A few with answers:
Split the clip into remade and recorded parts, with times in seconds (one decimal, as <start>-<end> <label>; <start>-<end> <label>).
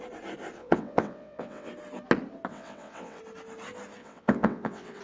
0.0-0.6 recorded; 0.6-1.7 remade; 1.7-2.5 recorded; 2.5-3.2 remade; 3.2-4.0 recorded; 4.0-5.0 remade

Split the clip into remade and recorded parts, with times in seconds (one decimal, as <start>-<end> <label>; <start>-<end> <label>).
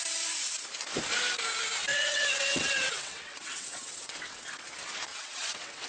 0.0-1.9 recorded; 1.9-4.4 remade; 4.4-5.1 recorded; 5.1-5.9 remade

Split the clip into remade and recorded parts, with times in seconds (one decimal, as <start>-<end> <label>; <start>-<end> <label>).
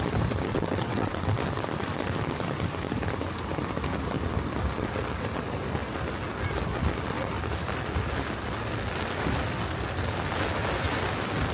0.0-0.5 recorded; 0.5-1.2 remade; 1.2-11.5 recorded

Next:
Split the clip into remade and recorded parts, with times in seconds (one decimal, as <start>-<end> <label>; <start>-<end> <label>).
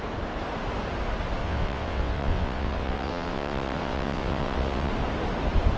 0.0-1.4 recorded; 1.4-4.9 remade; 4.9-5.8 recorded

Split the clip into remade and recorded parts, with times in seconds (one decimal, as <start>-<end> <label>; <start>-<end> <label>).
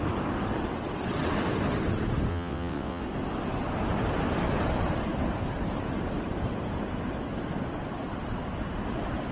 0.0-2.3 recorded; 2.3-3.0 remade; 3.0-9.3 recorded